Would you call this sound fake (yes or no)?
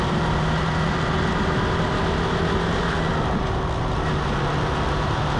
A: no